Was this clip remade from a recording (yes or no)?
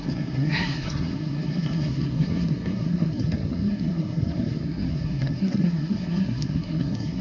yes